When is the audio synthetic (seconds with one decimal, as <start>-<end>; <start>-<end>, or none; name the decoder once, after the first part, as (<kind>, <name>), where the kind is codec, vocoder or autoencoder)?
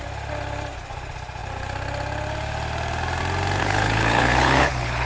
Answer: 3.6-5.1 (codec, HILCodec)